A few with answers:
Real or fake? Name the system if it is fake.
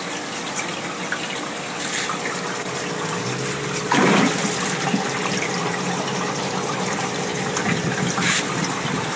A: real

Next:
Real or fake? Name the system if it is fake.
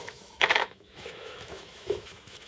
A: fake, autoencoder, DAC-VAE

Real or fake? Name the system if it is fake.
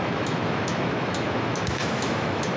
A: fake, autoencoder, DAC-VAE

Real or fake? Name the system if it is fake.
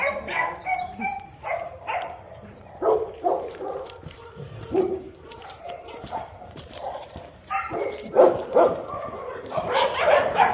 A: fake, vocoder, BigVGAN v2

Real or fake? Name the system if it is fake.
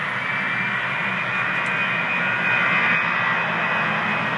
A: real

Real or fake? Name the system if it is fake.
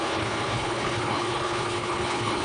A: fake, codec, HILCodec